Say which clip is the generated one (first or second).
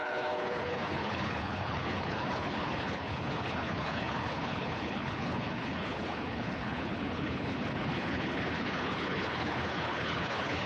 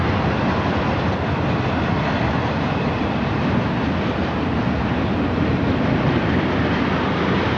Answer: first